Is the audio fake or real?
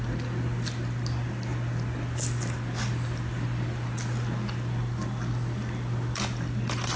real